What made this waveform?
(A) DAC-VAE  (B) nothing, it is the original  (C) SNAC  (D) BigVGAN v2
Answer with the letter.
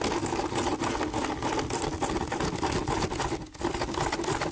B